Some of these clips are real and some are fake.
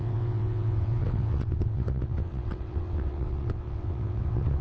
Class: fake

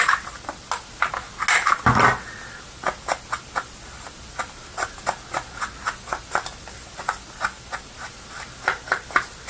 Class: real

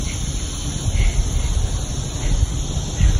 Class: real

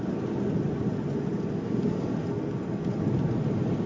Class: real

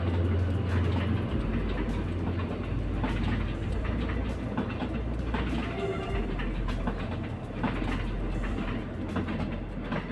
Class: real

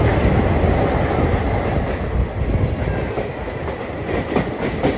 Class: real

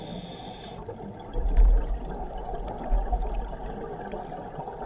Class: real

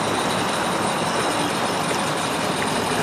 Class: real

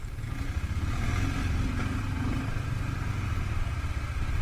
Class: fake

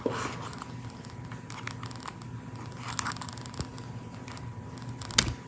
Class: real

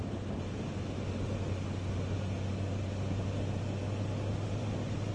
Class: real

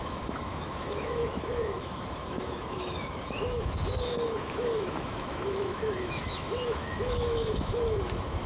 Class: fake